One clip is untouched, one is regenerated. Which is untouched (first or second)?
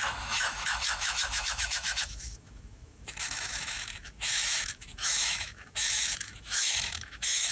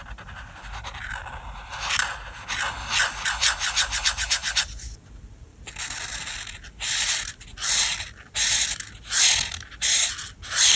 second